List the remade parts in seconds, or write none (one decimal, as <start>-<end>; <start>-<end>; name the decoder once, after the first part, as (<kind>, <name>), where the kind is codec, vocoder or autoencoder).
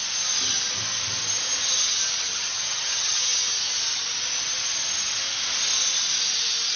2.2-3.2 (vocoder, HiFi-GAN)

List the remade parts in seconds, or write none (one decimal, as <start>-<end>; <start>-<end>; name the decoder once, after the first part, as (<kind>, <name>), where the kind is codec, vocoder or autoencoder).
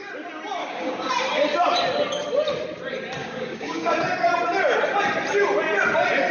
0.6-1.1 (codec, DAC); 3.2-4.0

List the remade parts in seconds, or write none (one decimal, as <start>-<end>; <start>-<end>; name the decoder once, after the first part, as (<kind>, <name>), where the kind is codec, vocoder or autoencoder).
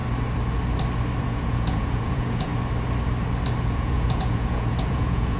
1.2-2.5 (vocoder, Vocos); 3.6-5.4